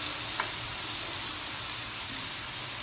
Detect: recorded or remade recorded